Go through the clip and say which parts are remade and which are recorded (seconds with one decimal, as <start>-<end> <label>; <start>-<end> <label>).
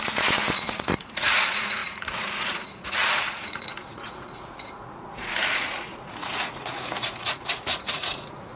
0.0-8.6 remade